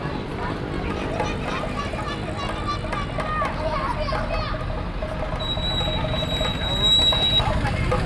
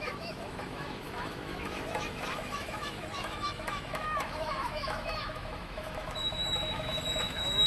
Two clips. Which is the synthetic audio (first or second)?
second